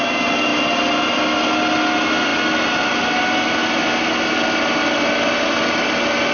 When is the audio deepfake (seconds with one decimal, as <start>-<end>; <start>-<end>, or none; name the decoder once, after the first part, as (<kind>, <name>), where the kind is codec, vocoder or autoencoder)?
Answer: none